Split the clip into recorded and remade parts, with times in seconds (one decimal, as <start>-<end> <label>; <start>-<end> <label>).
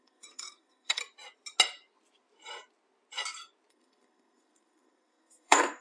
0.0-1.0 remade; 1.0-3.7 recorded; 3.7-5.8 remade